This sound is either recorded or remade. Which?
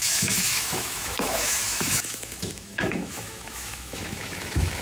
remade